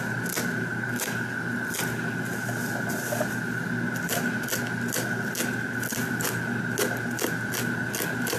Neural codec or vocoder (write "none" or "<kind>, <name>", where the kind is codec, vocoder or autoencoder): none